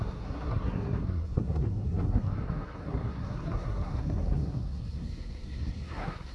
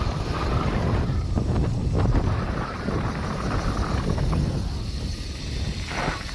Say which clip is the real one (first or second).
second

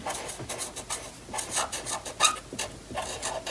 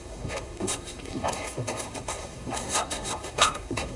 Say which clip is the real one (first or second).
first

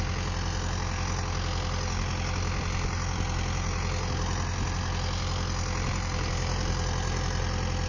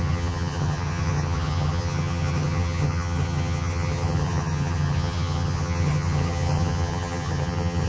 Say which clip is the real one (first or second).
first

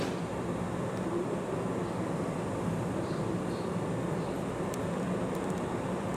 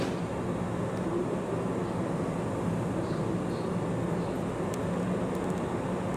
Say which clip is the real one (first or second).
second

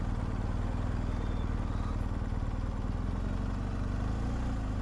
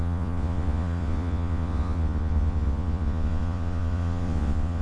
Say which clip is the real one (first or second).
first